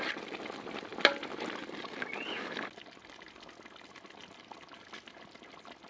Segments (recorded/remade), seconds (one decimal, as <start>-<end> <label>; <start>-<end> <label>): 0.0-5.9 recorded